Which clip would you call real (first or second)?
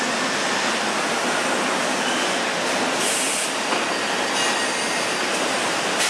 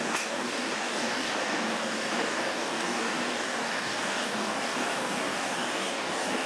first